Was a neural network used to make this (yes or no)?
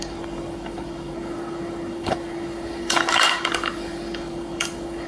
yes